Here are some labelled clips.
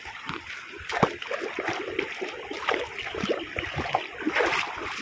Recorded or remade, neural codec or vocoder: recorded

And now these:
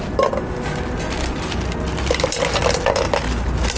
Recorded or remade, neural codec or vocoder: recorded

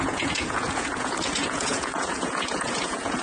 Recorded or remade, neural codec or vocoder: remade, vocoder, Vocos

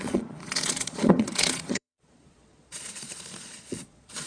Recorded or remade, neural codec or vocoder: remade, vocoder, Vocos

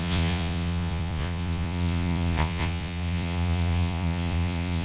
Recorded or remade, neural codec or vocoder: remade, vocoder, Vocos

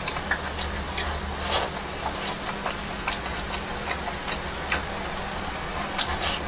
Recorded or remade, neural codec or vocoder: recorded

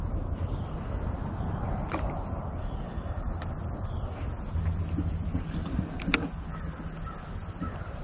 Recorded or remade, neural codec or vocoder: recorded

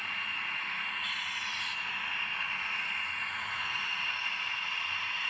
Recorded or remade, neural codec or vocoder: remade, vocoder, Vocos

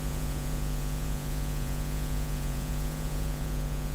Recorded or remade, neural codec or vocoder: remade, vocoder, Vocos